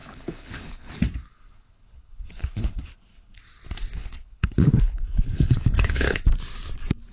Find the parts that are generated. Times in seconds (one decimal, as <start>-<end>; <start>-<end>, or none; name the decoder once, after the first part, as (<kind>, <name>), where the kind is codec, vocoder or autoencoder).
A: 0.0-0.9 (codec, HILCodec); 1.3-3.4; 4.0-6.2